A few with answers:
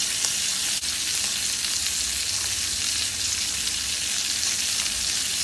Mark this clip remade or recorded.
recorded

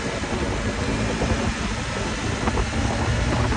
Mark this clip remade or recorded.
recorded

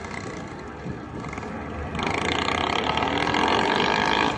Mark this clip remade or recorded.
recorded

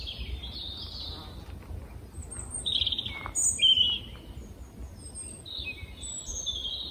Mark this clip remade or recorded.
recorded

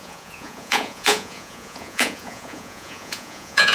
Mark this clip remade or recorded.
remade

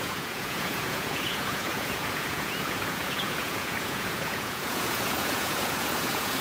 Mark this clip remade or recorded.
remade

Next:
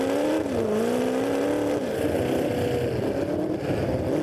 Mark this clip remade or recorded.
recorded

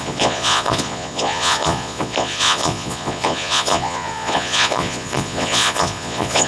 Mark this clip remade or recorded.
remade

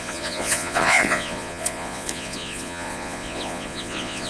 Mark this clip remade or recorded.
remade